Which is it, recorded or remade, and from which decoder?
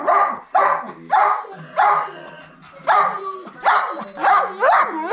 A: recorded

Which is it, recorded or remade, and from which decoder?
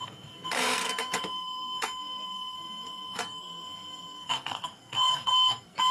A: remade, codec, SNAC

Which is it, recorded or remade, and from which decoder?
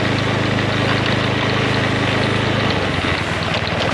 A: recorded